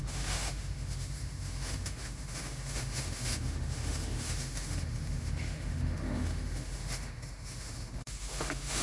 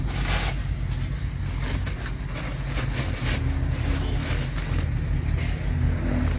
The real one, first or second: second